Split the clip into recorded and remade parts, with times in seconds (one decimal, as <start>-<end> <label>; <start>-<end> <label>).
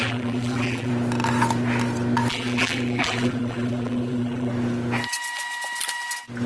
0.0-0.9 remade; 0.9-2.3 recorded; 2.3-4.5 remade; 4.5-6.5 recorded